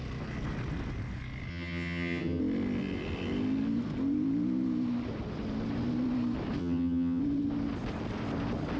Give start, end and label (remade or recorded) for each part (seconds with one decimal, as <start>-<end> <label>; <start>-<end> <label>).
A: 0.0-1.5 recorded; 1.5-2.4 remade; 2.4-6.6 recorded; 6.6-7.2 remade; 7.2-8.8 recorded